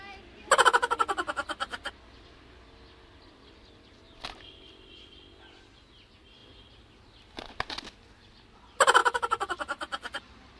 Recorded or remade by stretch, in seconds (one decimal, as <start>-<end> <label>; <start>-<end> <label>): 0.0-9.0 recorded; 9.0-10.1 remade; 10.1-10.6 recorded